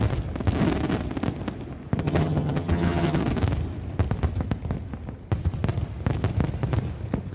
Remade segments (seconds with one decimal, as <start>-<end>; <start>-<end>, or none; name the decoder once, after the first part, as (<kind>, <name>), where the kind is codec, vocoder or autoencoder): 2.0-3.2 (vocoder, HiFi-GAN)

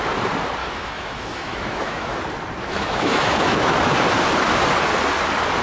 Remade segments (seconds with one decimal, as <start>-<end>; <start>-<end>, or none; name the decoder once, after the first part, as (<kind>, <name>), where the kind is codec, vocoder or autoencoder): 0.6-2.2 (autoencoder, DAC-VAE); 2.6-3.9

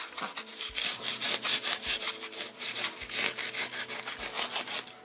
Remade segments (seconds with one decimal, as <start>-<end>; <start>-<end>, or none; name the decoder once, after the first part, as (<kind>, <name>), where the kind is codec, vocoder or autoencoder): 0.5-3.5 (vocoder, BigVGAN v2)

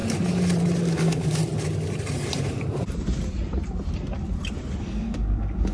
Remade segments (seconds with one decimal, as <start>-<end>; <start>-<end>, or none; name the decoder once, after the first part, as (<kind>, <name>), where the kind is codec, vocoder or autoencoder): 0.8-1.4 (codec, DAC); 4.8-5.7

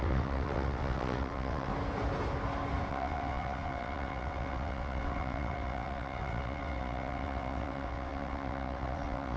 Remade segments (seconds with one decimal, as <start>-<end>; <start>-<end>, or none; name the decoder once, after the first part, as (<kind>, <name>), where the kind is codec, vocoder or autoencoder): 0.0-1.7 (vocoder, WaveNeXt); 2.9-9.4

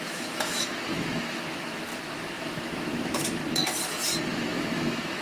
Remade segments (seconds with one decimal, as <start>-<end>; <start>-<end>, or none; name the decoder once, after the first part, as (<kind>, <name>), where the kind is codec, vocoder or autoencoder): 0.0-3.4 (autoencoder, DAC-VAE); 4.3-5.2